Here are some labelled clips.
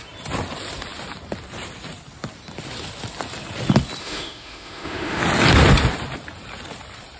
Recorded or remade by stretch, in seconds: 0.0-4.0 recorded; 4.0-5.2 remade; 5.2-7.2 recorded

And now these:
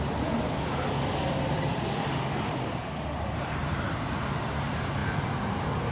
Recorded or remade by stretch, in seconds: 0.0-5.0 recorded; 5.0-5.9 remade

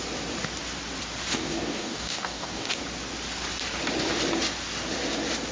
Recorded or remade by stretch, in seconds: 0.0-1.4 recorded; 1.4-2.8 remade; 2.8-5.5 recorded